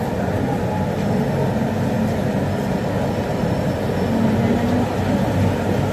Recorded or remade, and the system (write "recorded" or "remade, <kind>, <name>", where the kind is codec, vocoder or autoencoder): recorded